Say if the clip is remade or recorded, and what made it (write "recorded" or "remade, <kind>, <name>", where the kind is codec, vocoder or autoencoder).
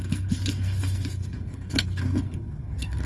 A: remade, codec, SNAC